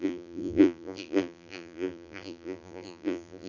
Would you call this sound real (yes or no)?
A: no